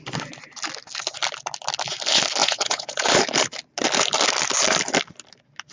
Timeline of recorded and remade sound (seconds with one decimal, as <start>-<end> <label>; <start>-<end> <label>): 0.0-2.4 recorded; 2.4-3.1 remade; 3.1-5.7 recorded

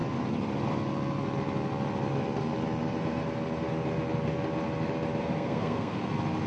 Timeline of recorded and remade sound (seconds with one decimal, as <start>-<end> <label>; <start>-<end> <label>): 0.0-5.2 recorded; 5.2-6.0 remade; 6.0-6.5 recorded